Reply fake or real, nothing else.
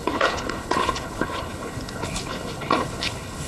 fake